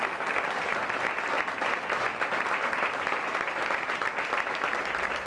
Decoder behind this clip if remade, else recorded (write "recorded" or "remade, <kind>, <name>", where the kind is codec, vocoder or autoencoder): recorded